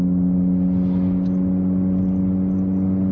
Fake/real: real